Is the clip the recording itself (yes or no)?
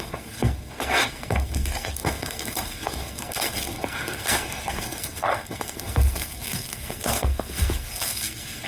no